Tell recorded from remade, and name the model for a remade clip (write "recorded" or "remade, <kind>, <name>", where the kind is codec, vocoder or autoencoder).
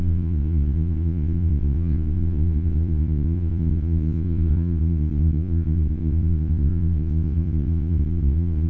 remade, vocoder, Vocos